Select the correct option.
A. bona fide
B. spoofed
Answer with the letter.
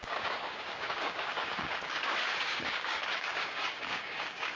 B